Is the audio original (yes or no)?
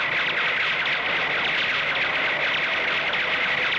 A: yes